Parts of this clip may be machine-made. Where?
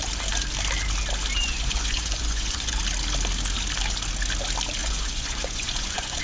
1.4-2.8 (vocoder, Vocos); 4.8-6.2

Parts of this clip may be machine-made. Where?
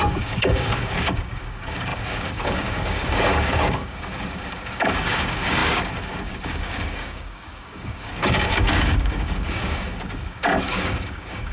0.0-11.5 (codec, DAC)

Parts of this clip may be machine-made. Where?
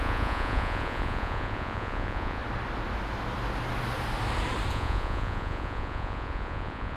0.0-2.4 (vocoder, Vocos); 4.7-7.0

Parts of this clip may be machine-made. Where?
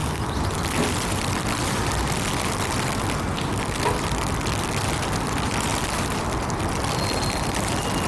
none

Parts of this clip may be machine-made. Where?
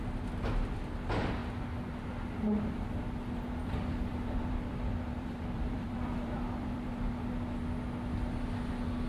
3.6-7.1 (vocoder, BigVGAN v2)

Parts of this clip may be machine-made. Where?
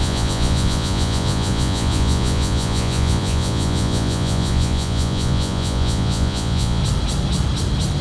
0.0-6.8 (vocoder, Vocos)